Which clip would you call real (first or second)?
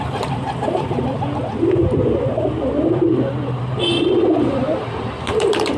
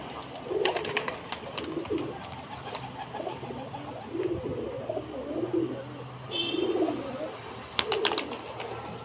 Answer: second